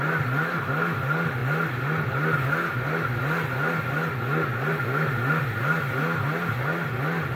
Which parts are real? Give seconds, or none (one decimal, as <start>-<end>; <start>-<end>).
0.0-7.4

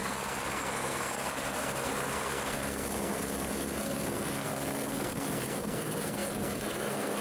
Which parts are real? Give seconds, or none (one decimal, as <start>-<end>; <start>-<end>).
none

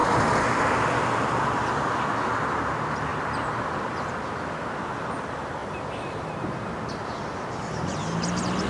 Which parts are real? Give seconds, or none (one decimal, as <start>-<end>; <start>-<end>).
0.0-8.7

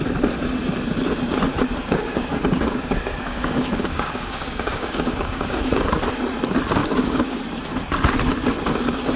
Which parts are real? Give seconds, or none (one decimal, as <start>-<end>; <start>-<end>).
0.0-1.8; 5.9-6.8; 7.4-9.2

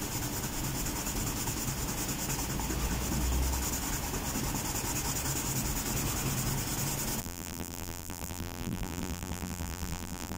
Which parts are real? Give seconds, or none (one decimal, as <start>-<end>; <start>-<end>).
0.0-7.2